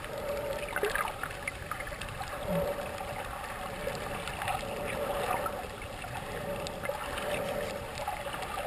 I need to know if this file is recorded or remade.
recorded